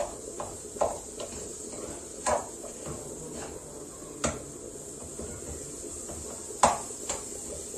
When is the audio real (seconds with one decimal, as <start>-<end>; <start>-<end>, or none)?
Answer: 0.0-7.8